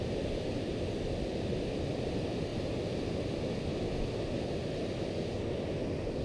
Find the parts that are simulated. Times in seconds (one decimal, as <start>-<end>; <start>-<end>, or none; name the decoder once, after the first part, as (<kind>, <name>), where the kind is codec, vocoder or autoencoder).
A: 0.0-0.7 (vocoder, BigVGAN v2); 2.0-2.5